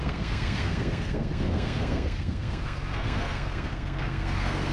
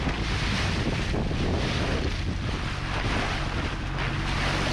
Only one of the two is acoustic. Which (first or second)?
second